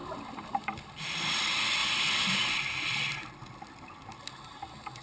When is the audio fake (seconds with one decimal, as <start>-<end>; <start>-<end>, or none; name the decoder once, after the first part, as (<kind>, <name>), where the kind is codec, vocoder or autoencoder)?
0.0-1.3 (vocoder, BigVGAN v2); 1.8-3.6